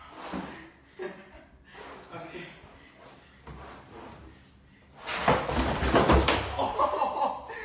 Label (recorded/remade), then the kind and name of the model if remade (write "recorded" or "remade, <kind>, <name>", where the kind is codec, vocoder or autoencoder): recorded